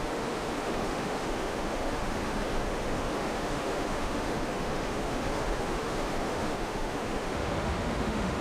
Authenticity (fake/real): fake